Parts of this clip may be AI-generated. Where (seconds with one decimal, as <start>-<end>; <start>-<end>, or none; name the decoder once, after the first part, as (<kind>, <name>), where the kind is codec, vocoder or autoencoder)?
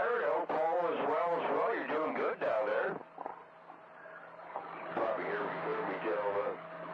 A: none